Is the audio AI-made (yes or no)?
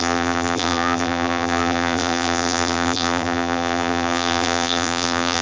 yes